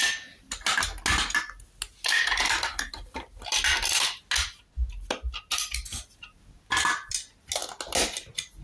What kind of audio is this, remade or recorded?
recorded